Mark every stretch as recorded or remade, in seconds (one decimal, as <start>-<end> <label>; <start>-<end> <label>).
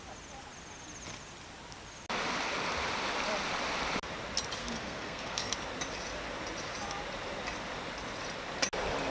0.0-4.6 recorded; 4.6-5.5 remade; 5.5-9.1 recorded